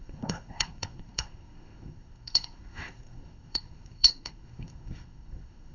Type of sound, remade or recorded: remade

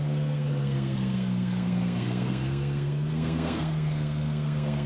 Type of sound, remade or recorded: remade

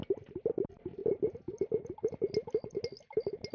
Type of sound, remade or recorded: recorded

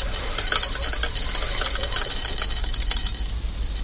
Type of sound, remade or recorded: recorded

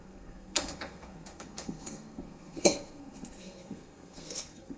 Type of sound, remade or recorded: remade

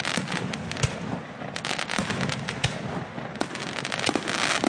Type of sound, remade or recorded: recorded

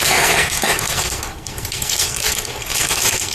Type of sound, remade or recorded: remade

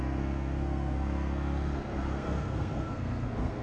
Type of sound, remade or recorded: remade